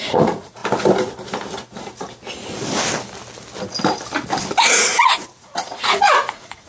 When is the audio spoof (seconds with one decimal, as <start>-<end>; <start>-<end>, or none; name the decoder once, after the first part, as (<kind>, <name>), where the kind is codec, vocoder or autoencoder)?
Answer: 0.0-0.6 (vocoder, Vocos); 4.6-6.7